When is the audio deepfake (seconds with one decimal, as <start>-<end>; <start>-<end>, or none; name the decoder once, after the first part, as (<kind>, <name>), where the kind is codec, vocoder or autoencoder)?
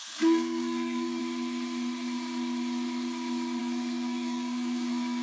0.0-1.2 (codec, SNAC); 3.6-5.2